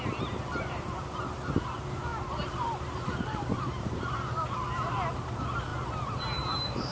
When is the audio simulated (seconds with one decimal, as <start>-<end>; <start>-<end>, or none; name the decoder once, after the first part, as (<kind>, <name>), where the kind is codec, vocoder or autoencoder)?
0.0-6.9 (vocoder, BigVGAN v2)